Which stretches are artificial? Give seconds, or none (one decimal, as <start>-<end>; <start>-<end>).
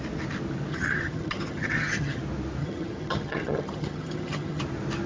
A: 0.7-2.2; 2.6-4.6